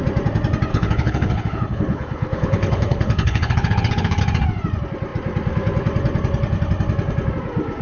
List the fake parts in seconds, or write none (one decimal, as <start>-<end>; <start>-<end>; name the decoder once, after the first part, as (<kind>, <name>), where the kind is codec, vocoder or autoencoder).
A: 0.7-4.2 (codec, HILCodec)